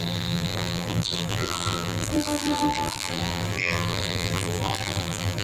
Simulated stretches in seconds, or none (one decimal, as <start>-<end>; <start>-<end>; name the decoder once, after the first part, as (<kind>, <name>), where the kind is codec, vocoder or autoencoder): 0.0-5.4 (vocoder, BigVGAN v2)